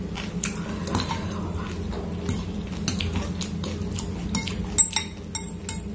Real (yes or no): yes